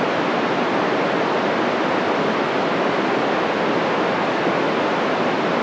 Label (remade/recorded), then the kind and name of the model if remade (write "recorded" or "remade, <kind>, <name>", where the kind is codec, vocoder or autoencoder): recorded